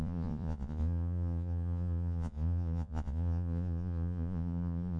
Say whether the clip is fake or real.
fake